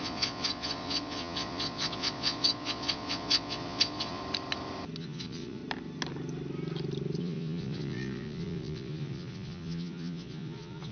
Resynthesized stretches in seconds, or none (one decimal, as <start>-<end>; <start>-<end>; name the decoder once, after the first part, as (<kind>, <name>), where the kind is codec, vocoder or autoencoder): 0.0-4.2 (vocoder, Vocos); 5.0-5.6; 7.2-10.9